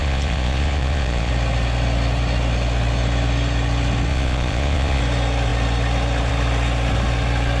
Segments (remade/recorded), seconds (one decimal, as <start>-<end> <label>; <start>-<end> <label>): 0.0-1.3 remade; 1.3-4.1 recorded; 4.1-5.0 remade; 5.0-7.6 recorded